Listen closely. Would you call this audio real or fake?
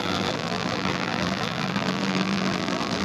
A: fake